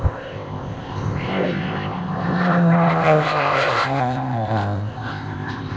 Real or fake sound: fake